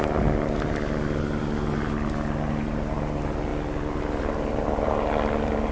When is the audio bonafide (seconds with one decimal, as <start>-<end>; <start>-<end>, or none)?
0.0-5.7

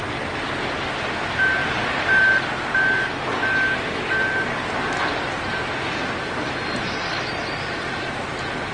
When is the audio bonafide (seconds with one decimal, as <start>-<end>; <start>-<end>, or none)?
0.0-1.6; 2.2-8.7

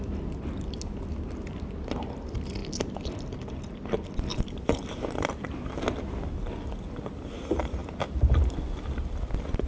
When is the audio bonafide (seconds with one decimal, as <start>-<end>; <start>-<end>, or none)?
0.0-2.6; 3.5-4.3; 5.3-9.7

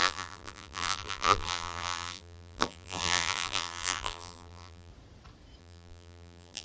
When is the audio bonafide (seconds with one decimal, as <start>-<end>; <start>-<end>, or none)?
4.9-5.6

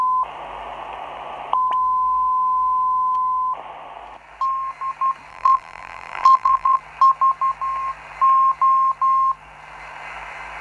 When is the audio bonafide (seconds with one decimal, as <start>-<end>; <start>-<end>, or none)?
0.0-5.3; 6.8-10.6

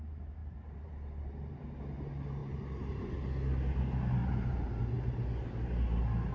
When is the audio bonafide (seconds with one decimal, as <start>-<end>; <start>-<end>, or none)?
0.0-0.4; 1.6-2.4; 3.0-4.2; 4.8-6.3